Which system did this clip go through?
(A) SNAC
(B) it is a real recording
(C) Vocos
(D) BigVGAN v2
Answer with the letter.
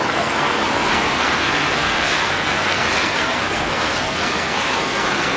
A